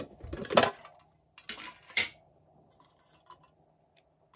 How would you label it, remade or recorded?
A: recorded